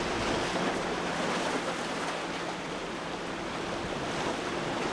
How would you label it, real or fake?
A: real